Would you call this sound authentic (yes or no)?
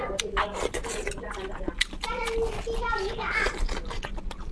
yes